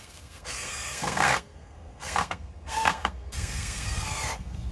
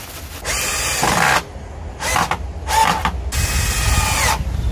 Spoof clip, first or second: first